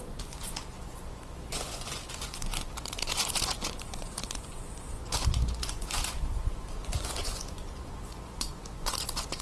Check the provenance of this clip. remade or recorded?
remade